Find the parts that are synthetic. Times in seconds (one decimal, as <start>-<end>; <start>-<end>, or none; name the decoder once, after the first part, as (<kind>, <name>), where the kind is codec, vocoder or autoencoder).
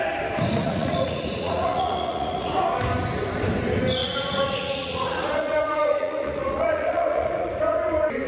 0.6-2.5 (vocoder, Vocos); 4.0-7.5